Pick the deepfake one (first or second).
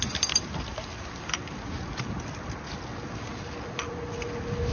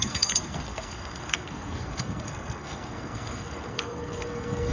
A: second